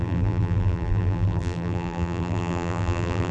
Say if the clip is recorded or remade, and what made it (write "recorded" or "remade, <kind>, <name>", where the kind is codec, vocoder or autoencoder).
remade, vocoder, BigVGAN v2